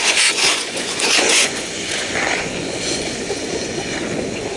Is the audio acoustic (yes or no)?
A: no